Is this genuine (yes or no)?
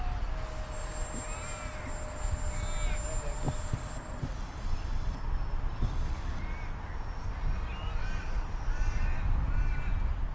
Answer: yes